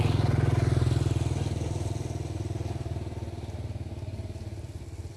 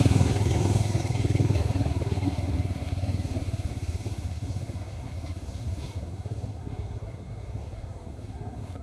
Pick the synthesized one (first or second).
second